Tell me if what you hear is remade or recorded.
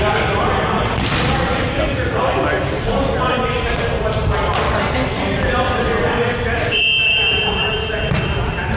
recorded